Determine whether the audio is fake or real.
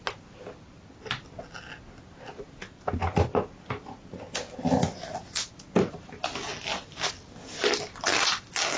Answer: real